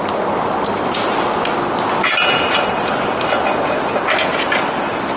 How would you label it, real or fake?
real